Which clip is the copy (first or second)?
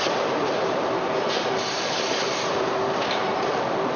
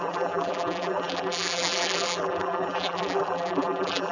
second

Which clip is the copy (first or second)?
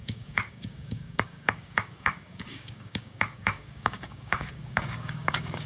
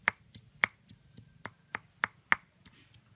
first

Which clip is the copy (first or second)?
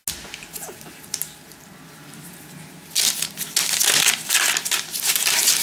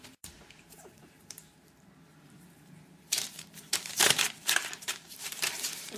second